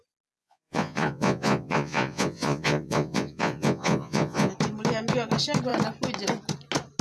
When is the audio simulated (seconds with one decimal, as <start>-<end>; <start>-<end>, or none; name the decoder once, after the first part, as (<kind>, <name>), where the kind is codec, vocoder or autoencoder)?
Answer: 0.4-4.5 (vocoder, Vocos)